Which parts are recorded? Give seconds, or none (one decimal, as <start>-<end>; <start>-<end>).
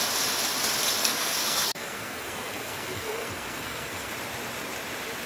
0.0-1.0; 4.1-5.3